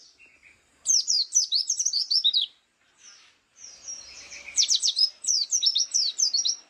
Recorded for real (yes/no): no